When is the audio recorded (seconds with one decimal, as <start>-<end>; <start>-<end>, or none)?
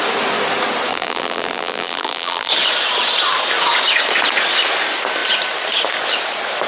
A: 0.0-0.9; 2.5-6.7